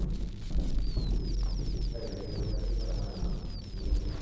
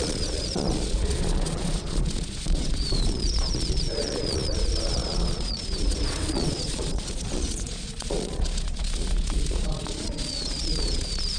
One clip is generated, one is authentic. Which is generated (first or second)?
second